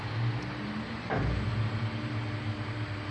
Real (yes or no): yes